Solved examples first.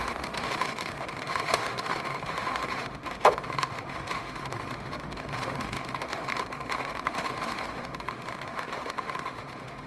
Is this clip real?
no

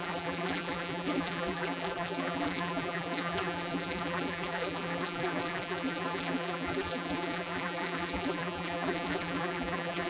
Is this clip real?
no